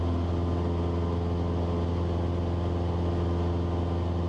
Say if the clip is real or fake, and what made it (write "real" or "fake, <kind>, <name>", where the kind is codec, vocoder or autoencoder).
real